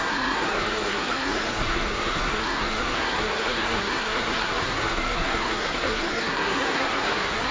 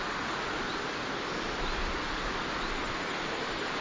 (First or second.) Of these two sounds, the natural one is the second